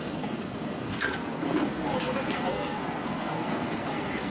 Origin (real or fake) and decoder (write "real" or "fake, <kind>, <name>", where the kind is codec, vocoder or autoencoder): fake, codec, SNAC